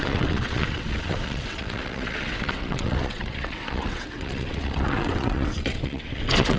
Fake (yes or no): yes